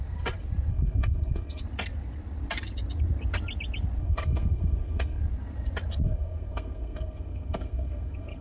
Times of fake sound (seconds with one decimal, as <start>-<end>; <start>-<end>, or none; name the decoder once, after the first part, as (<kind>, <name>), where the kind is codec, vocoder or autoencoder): 0.7-1.6 (codec, SNAC); 4.0-5.2; 6.0-8.4